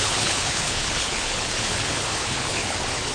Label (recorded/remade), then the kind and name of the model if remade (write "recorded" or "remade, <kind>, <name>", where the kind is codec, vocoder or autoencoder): remade, codec, HILCodec